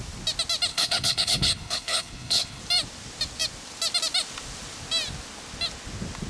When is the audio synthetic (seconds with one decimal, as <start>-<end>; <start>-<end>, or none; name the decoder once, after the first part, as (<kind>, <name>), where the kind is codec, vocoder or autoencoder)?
0.7-2.6 (codec, HILCodec)